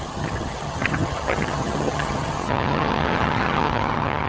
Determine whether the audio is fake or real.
fake